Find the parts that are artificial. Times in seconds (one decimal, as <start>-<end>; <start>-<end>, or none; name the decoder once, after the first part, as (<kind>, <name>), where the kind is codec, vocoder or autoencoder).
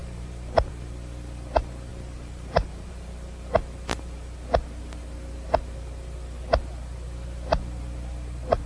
0.0-0.7 (vocoder, BigVGAN v2); 1.9-2.9